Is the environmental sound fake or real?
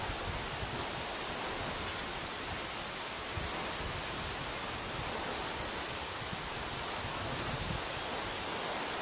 real